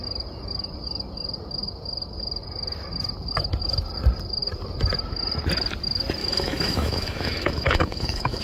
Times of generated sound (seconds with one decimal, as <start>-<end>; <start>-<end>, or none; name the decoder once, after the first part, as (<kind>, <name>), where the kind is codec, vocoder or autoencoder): 6.2-8.4 (autoencoder, DAC-VAE)